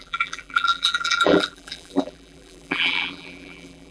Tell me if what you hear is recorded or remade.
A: remade